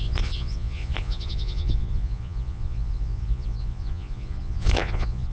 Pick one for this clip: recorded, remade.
remade